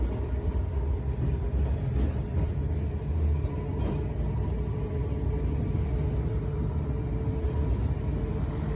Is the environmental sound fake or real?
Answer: real